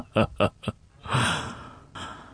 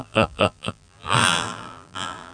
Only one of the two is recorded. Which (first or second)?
first